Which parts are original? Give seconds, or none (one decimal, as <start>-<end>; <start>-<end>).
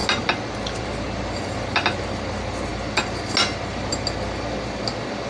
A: 0.0-5.3